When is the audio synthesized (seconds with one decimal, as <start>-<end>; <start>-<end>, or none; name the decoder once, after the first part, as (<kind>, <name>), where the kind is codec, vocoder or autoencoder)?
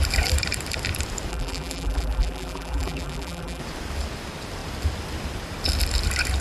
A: 1.3-3.6 (vocoder, BigVGAN v2)